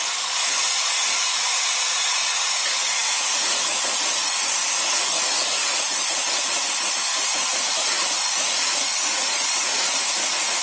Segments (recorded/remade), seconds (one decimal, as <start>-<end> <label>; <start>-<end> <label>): 0.0-10.6 remade